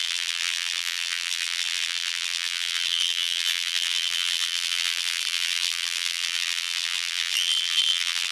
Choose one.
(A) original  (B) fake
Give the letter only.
B